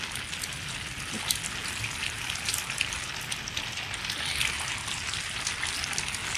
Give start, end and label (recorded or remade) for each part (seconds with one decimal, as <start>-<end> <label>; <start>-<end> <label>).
0.0-6.4 recorded